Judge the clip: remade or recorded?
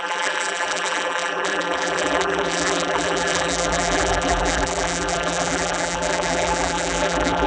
remade